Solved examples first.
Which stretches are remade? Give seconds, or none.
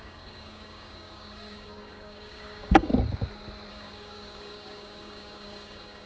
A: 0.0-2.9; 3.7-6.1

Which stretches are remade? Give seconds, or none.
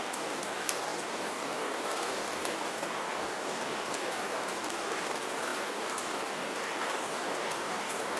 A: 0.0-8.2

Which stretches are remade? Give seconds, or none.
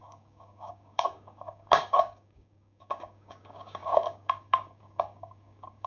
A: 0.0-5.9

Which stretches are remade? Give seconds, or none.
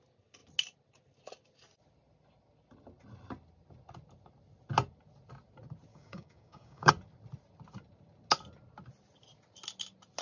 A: 5.9-6.9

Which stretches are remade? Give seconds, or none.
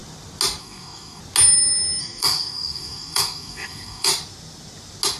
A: 0.6-1.2; 2.0-4.1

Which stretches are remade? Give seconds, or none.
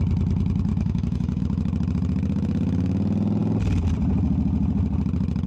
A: 0.7-1.4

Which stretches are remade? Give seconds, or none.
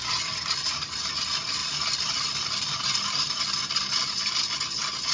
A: none